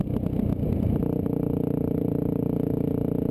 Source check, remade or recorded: recorded